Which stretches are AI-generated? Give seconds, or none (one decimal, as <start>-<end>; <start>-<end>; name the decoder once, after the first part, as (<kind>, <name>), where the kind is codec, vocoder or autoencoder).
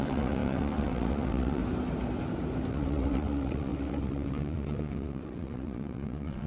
0.0-1.6 (vocoder, WaveNeXt); 2.7-6.5